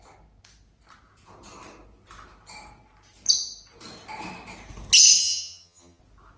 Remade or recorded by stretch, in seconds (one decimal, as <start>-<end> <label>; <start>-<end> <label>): 0.0-5.2 recorded; 5.2-6.0 remade; 6.0-6.4 recorded